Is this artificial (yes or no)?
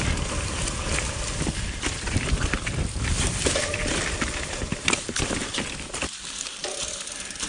yes